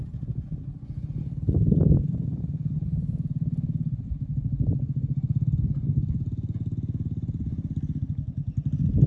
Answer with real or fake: real